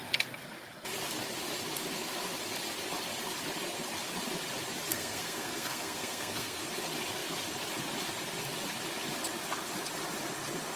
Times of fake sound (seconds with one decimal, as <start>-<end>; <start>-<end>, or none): 4.9-6.6